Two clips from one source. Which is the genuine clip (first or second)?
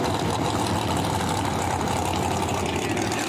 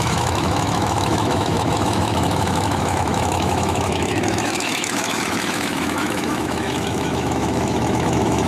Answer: first